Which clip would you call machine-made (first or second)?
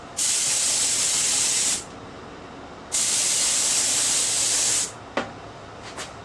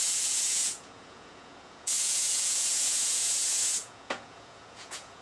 second